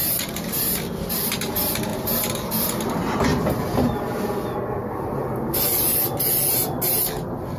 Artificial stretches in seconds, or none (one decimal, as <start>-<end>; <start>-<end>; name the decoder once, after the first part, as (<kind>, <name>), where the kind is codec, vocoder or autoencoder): 0.0-0.6 (vocoder, BigVGAN v2); 1.9-2.8; 3.3-6.0